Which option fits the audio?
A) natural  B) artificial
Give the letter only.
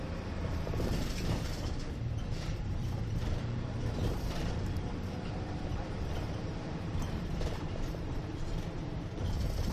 B